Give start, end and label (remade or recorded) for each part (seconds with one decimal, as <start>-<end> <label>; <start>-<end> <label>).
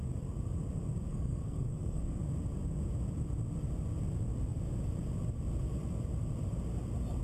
0.0-1.1 recorded; 1.1-2.2 remade; 2.2-7.2 recorded